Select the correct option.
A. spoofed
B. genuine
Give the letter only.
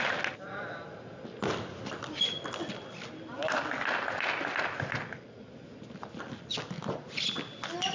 B